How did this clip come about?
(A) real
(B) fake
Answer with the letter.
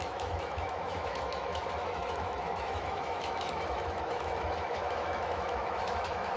B